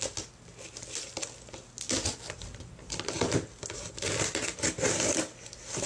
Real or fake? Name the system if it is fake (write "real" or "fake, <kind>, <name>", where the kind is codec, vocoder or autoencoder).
real